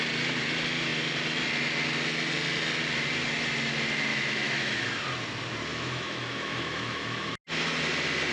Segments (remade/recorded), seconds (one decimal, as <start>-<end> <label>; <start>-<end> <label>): 0.0-4.1 recorded; 4.1-5.0 remade; 5.0-5.7 recorded; 5.7-7.3 remade; 7.3-8.3 recorded